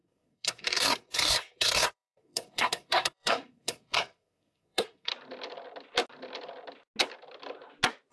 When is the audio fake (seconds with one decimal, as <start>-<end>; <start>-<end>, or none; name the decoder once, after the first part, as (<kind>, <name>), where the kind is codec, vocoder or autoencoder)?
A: 0.0-5.1 (codec, SNAC)

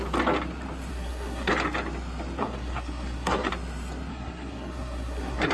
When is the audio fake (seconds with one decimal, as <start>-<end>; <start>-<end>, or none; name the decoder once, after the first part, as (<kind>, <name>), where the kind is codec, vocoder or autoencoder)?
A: 0.9-1.5 (codec, SNAC); 2.4-3.5; 4.1-5.5